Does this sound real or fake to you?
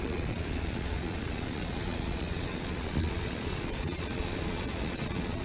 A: fake